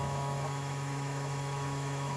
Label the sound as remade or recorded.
remade